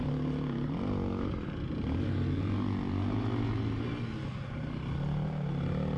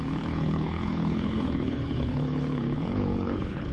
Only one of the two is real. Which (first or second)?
first